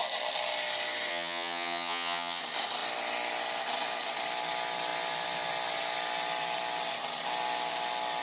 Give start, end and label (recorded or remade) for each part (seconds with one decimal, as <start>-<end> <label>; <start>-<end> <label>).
0.0-1.1 recorded; 1.1-2.4 remade; 2.4-8.2 recorded